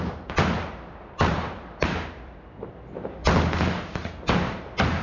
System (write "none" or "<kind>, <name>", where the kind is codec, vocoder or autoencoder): vocoder, BigVGAN v2